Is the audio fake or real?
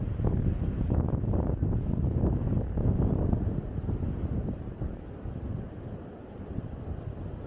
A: real